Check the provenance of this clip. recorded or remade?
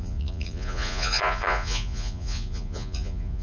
remade